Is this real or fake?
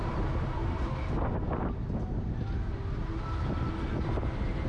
real